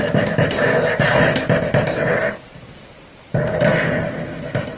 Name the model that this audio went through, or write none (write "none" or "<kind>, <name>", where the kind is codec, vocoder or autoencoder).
none